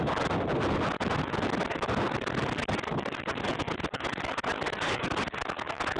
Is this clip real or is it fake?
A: real